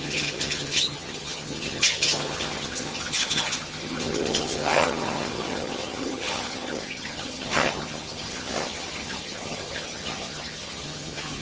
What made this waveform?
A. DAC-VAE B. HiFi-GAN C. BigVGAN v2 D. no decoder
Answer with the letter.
B